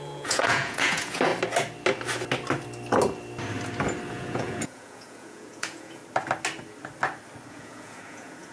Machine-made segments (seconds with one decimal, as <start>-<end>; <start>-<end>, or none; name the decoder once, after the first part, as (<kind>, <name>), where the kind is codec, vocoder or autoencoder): 0.0-1.3 (vocoder, Vocos); 4.1-6.0; 7.5-8.5